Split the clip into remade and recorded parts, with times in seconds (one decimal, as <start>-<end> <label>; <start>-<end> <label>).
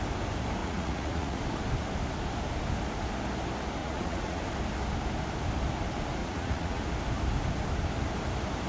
0.0-0.6 recorded; 0.6-1.4 remade; 1.4-3.8 recorded; 3.8-4.4 remade; 4.4-6.2 recorded; 6.2-6.8 remade; 6.8-8.7 recorded